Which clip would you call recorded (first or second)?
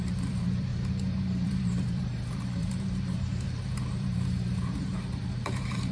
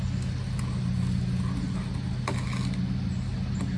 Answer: second